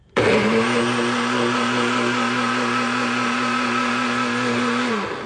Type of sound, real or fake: real